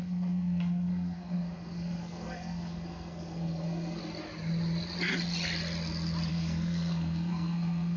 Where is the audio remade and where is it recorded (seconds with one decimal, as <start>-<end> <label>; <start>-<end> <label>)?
0.0-4.0 remade; 4.0-6.3 recorded; 6.3-8.0 remade